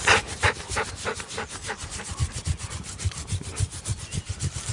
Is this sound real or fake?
real